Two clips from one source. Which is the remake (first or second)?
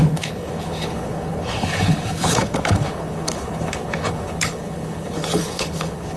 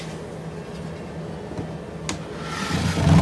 first